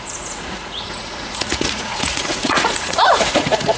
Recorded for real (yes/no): no